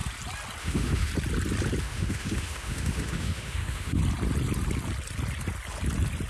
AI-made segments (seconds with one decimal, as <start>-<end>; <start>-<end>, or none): 0.6-1.1; 1.8-4.0